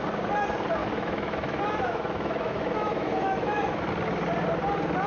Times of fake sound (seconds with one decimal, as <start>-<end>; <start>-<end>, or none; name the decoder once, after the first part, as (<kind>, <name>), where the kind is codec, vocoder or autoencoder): 0.8-3.9 (autoencoder, DAC-VAE)